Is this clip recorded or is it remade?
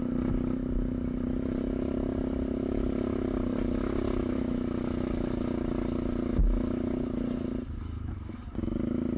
recorded